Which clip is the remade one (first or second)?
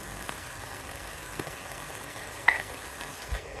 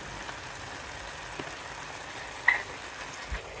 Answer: first